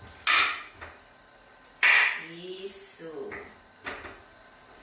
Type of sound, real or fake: real